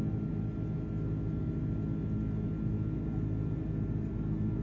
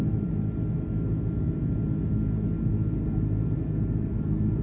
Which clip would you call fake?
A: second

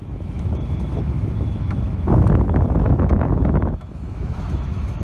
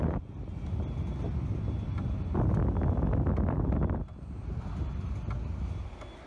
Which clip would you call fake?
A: first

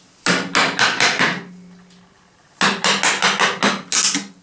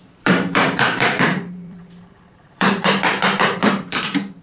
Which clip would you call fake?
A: second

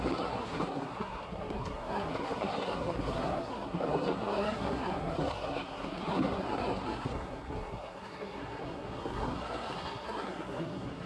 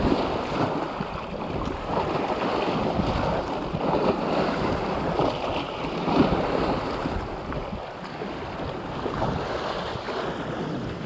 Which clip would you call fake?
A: first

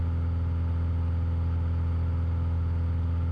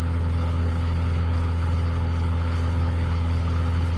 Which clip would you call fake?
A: second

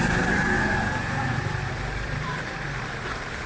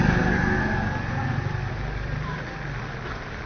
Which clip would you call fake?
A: first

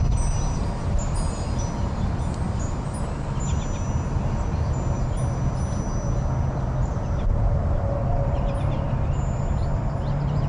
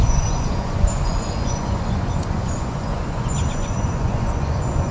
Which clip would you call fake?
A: second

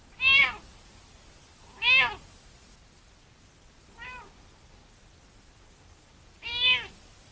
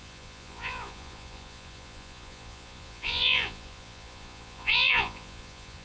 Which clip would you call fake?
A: second